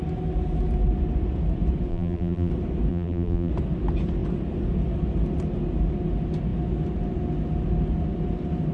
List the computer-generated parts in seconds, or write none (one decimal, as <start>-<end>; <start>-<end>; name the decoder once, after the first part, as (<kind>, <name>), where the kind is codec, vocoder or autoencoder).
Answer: 1.9-2.5 (vocoder, BigVGAN v2); 2.9-3.5